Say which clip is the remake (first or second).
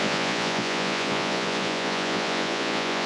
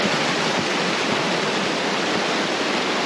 first